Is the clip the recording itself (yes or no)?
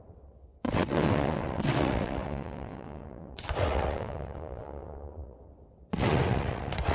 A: no